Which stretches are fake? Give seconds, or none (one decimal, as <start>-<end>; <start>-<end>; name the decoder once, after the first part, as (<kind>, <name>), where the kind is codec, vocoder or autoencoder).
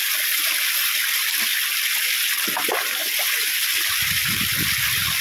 none